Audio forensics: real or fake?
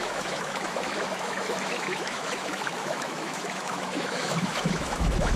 fake